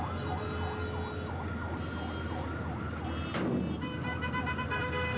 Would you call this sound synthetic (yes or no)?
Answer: no